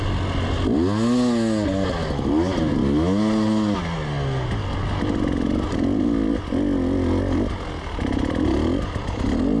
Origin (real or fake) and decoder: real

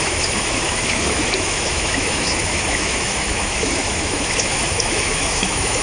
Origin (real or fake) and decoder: fake, autoencoder, DAC-VAE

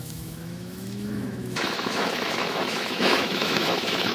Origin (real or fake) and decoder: fake, autoencoder, DAC-VAE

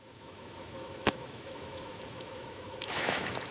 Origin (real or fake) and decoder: fake, autoencoder, DAC-VAE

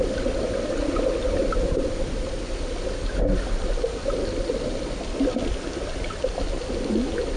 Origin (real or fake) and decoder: real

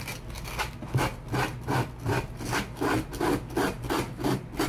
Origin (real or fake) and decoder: real